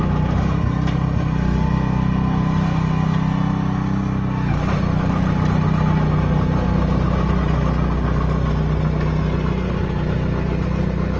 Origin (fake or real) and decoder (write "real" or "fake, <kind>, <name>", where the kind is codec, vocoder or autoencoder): real